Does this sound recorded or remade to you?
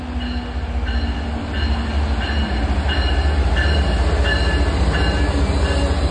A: recorded